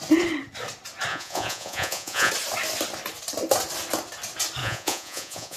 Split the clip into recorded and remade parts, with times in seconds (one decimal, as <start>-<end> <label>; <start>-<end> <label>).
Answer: 0.0-1.1 recorded; 1.1-2.3 remade; 2.3-4.6 recorded; 4.6-5.6 remade